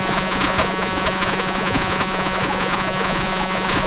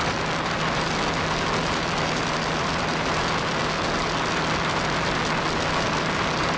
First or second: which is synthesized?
first